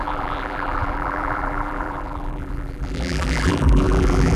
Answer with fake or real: fake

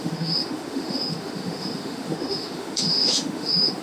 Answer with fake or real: fake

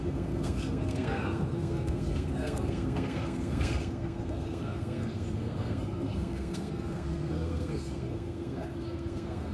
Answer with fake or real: fake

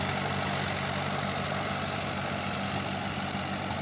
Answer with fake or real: real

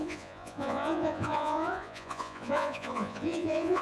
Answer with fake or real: fake